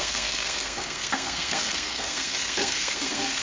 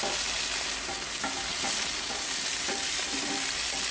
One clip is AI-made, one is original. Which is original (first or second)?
second